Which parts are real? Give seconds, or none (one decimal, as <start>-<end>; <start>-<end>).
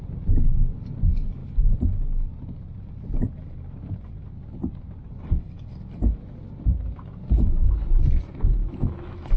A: 0.0-8.6